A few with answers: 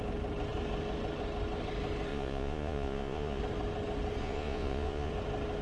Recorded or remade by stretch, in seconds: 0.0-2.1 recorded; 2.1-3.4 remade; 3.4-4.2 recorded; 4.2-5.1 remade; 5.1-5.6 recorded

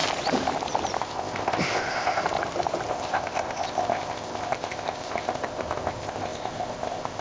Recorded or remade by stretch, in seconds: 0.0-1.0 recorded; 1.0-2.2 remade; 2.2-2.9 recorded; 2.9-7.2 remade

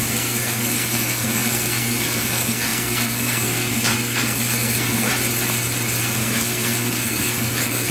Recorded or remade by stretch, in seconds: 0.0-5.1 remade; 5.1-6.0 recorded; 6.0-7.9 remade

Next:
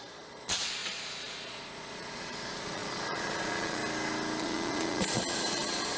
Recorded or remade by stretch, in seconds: 0.0-3.8 remade; 3.8-4.4 recorded; 4.4-6.0 remade

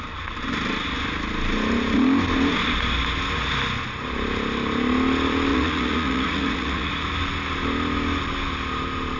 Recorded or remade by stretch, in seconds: 0.0-5.5 recorded; 5.5-6.9 remade; 6.9-9.2 recorded